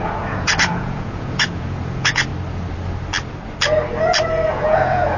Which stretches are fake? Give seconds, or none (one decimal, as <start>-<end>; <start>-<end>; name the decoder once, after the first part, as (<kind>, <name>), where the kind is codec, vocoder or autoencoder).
0.0-2.3 (vocoder, Vocos); 4.2-5.2